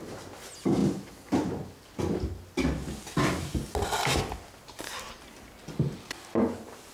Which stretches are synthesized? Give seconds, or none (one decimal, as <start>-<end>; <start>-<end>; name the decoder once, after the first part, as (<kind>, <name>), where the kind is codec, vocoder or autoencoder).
none